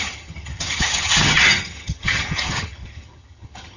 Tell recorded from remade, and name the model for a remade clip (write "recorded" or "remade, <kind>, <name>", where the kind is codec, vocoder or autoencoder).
remade, vocoder, HiFi-GAN